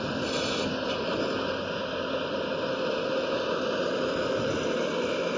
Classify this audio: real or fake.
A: real